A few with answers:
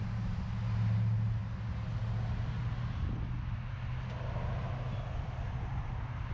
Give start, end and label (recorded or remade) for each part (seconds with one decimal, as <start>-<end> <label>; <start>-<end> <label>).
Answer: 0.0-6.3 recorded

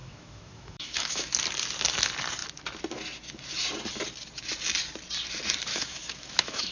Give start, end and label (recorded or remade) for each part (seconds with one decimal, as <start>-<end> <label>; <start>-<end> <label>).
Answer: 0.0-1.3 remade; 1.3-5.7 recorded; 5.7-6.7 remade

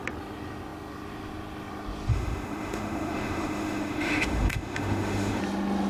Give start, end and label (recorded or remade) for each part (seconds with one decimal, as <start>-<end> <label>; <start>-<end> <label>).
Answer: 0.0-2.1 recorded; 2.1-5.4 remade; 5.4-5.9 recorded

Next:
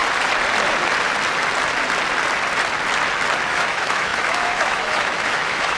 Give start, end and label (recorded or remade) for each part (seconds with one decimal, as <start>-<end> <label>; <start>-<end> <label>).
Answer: 0.0-3.5 recorded; 3.5-5.8 remade

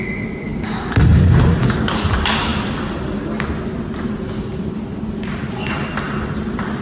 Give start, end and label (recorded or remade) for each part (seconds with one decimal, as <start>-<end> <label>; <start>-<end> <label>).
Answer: 0.0-6.8 recorded

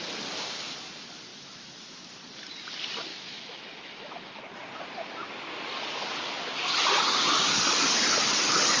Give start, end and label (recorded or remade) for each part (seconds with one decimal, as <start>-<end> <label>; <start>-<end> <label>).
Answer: 0.0-1.3 recorded; 1.3-2.0 remade; 2.0-3.1 recorded; 3.1-4.4 remade; 4.4-8.8 recorded

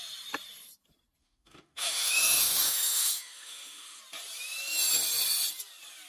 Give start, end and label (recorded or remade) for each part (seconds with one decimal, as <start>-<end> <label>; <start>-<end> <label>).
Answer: 0.0-1.2 recorded; 1.2-4.0 remade; 4.0-6.1 recorded